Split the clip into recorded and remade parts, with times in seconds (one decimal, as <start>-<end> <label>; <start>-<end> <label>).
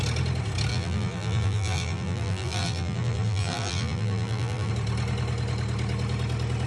0.0-0.7 recorded; 0.7-4.7 remade; 4.7-6.7 recorded